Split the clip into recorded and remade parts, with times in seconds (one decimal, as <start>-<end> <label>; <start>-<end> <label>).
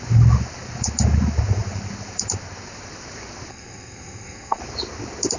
0.0-3.5 recorded; 3.5-4.6 remade; 4.6-5.4 recorded